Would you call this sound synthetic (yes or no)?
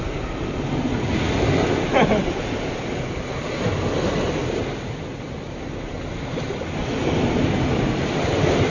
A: no